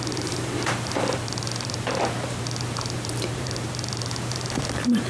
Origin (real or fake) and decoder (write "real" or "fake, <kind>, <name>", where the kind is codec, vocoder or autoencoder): fake, vocoder, BigVGAN v2